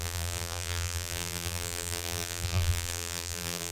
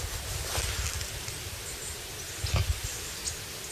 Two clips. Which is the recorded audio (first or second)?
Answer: second